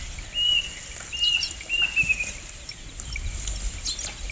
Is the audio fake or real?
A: real